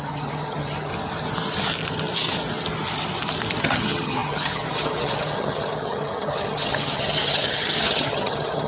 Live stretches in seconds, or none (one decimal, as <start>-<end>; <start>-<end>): 0.9-3.6